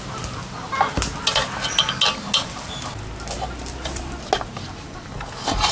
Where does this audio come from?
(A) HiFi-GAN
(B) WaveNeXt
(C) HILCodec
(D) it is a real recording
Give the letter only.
D